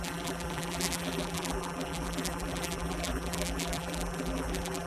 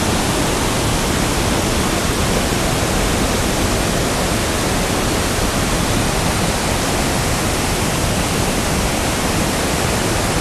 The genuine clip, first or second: second